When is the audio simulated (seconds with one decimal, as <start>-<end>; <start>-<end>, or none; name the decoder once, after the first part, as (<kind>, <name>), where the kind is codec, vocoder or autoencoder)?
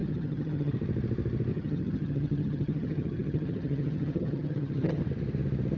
0.0-0.7 (vocoder, HiFi-GAN); 1.5-5.0